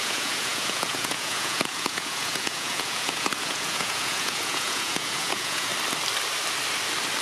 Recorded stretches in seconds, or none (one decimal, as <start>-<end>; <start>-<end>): 5.7-7.2